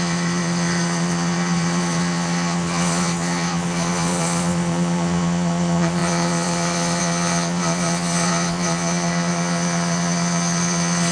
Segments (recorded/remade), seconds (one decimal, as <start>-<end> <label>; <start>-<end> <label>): 0.0-11.1 remade